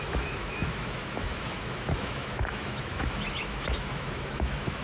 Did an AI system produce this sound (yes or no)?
yes